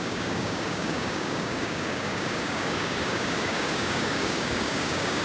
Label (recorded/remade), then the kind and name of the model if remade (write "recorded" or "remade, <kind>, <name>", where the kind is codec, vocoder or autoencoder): remade, codec, DAC